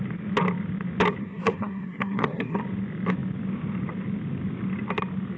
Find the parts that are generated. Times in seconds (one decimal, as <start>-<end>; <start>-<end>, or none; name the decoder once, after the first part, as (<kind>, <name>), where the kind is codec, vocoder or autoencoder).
1.2-2.6 (codec, SNAC)